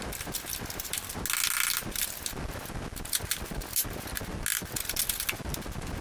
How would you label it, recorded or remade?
recorded